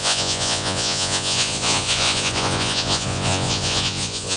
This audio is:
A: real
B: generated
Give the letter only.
B